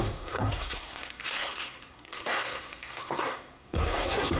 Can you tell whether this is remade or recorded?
remade